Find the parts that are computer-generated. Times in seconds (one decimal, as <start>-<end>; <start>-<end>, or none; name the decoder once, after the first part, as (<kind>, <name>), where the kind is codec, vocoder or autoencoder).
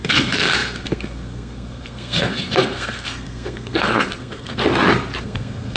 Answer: 0.0-4.6 (codec, SNAC); 5.2-5.8